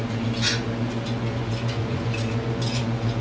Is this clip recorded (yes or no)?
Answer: no